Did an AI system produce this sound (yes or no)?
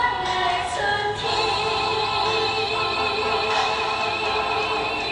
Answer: no